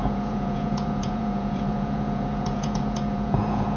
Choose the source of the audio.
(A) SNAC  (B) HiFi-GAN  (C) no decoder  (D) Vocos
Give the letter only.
D